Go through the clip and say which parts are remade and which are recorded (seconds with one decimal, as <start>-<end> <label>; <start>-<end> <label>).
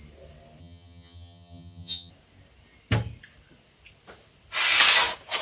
0.0-0.6 recorded; 0.6-2.1 remade; 2.1-5.4 recorded